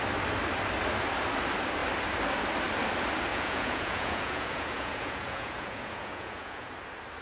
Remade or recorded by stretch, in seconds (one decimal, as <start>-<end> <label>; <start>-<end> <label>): 0.0-3.3 recorded; 3.3-6.7 remade; 6.7-7.2 recorded